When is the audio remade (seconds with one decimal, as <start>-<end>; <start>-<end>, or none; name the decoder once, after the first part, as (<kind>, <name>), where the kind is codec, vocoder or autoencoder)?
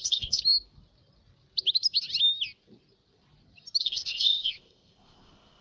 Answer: 0.0-0.4 (codec, ZipCodec); 3.8-5.6